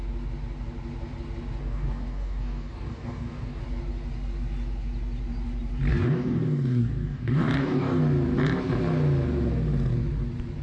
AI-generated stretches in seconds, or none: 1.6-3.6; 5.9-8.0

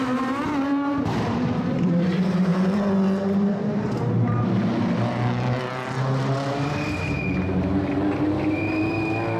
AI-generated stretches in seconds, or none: none